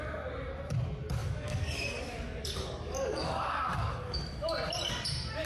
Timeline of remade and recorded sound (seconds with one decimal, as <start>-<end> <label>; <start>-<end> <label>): 0.0-1.2 recorded; 1.2-4.5 remade; 4.5-5.5 recorded